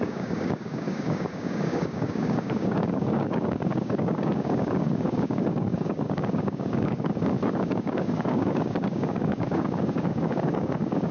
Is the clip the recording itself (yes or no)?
no